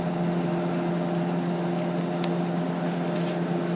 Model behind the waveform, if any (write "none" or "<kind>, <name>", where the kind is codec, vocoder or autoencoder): none